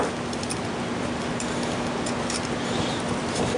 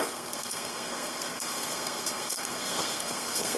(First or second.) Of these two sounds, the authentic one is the first